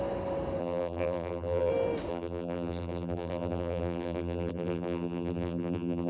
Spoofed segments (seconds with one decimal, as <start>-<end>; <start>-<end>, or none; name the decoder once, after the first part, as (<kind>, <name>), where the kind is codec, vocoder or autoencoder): 0.6-1.7 (vocoder, BigVGAN v2); 2.1-6.1